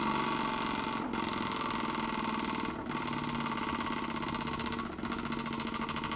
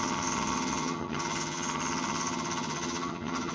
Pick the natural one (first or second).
first